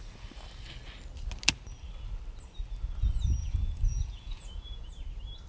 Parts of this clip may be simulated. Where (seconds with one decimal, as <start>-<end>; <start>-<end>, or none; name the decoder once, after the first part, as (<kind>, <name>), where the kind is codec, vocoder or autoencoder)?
3.4-4.9 (vocoder, Vocos)